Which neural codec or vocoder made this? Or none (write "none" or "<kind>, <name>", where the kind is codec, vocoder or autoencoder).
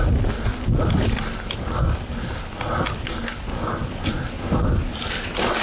none